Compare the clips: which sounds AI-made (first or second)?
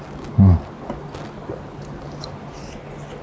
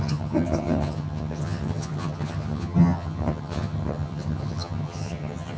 second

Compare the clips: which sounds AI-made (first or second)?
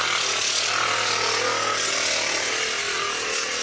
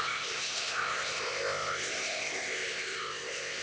second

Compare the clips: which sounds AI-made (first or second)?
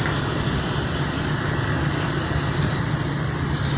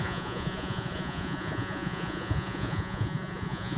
second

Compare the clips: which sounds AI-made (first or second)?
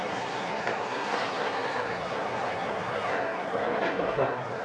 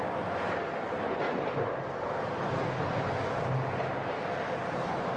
first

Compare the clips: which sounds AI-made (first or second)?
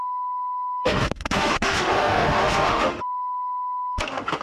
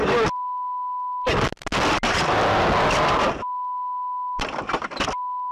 first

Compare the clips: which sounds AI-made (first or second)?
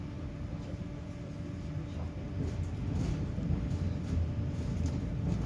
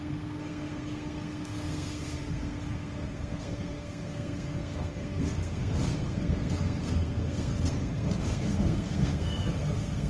second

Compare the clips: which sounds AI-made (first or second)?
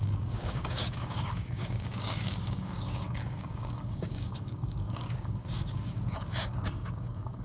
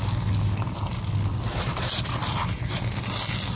first